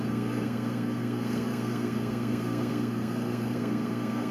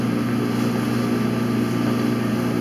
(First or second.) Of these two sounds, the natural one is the second